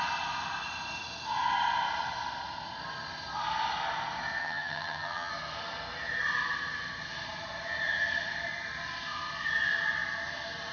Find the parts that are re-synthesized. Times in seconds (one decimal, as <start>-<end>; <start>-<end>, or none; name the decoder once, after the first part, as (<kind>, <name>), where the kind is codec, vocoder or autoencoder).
4.4-5.3 (vocoder, HiFi-GAN)